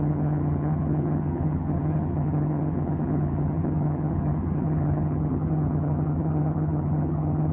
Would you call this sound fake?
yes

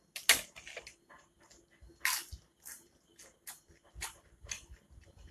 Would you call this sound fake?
no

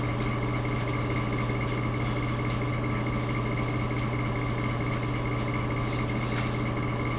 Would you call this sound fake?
no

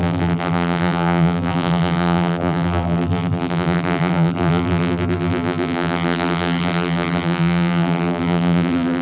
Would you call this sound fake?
yes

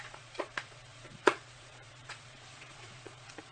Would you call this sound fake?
yes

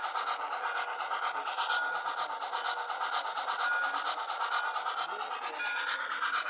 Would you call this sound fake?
no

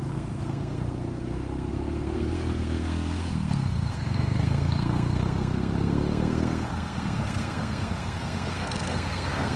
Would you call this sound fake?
yes